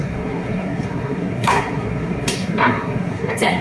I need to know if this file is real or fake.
fake